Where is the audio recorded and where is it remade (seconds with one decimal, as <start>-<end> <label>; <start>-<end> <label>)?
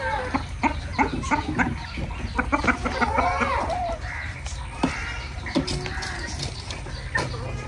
0.0-7.7 recorded